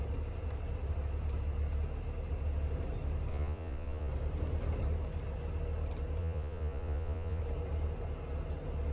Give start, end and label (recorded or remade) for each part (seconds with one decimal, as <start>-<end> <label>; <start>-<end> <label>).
0.0-3.3 recorded; 3.3-4.1 remade; 4.1-6.2 recorded; 6.2-7.4 remade; 7.4-8.9 recorded